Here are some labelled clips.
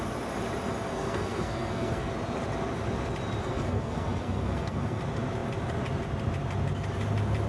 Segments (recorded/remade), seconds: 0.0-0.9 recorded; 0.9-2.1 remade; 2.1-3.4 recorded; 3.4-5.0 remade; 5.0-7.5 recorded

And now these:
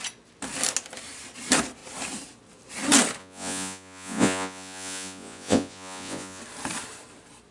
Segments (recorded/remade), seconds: 0.0-3.2 recorded; 3.2-6.4 remade; 6.4-7.5 recorded